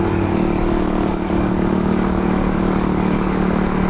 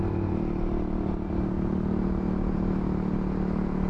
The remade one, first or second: first